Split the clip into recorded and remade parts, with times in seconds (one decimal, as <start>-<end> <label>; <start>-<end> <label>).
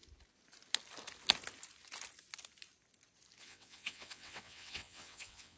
0.0-3.4 recorded; 3.4-5.6 remade